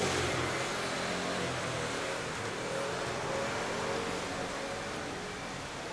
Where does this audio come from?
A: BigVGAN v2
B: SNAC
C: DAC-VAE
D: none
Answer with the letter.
D